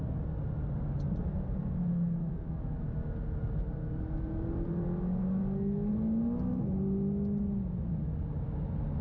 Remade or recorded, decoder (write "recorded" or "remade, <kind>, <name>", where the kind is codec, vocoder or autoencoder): recorded